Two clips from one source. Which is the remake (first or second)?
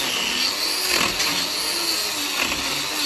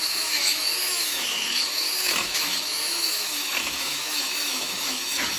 second